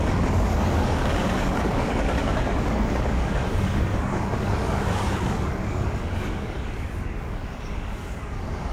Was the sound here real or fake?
fake